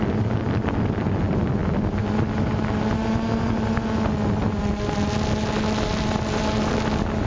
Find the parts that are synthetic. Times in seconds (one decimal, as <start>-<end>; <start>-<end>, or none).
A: none